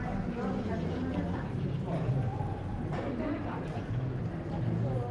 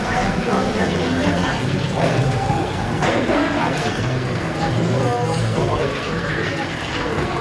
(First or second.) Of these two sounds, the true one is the first